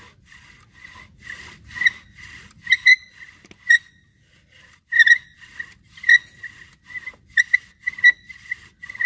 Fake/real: real